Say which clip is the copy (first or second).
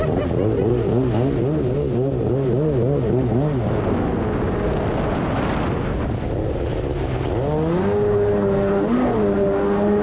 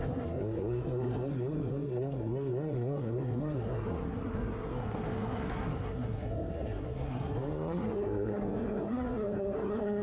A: second